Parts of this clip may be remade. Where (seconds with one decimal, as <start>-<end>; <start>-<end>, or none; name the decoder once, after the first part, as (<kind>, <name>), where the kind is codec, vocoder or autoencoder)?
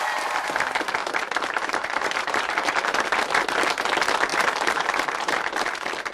1.0-3.2 (vocoder, BigVGAN v2); 4.3-5.3